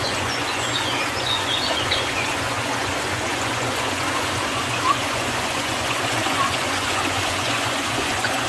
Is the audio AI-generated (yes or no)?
yes